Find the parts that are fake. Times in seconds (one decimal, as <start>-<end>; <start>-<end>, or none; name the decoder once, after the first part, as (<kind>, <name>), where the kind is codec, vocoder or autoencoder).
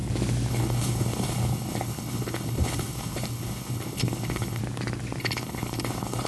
0.5-4.6 (codec, HILCodec); 5.2-6.3